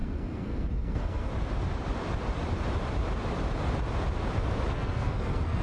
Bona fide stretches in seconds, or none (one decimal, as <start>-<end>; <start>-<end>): 1.3-4.7